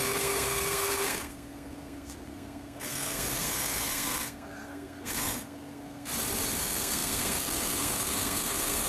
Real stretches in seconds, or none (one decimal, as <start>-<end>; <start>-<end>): 6.1-6.6